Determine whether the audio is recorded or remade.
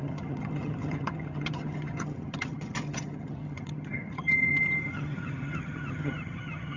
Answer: remade